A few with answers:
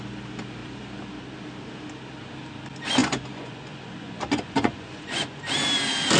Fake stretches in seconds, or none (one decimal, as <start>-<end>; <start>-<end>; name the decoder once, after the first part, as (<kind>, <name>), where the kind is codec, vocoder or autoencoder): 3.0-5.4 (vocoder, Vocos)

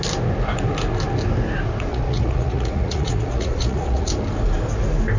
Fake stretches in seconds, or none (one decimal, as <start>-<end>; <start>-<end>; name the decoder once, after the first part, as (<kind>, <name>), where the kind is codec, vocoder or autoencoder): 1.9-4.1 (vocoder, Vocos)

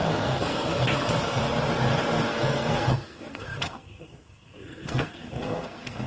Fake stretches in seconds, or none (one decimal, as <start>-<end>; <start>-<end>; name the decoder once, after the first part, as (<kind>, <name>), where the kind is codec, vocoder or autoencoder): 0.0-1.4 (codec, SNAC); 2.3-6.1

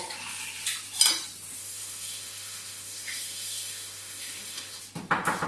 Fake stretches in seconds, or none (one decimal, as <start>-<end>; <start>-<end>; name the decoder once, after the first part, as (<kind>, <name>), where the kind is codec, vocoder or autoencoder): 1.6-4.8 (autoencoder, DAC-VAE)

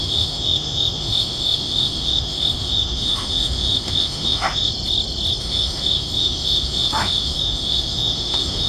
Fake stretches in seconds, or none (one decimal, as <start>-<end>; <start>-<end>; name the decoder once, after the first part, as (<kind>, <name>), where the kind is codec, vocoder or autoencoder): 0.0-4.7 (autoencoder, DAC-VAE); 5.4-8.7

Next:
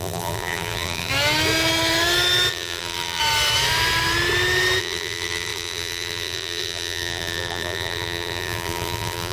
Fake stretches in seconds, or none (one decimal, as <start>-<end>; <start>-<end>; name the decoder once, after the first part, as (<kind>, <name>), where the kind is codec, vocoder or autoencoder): 0.0-1.1 (vocoder, BigVGAN v2); 2.5-3.2; 4.8-9.3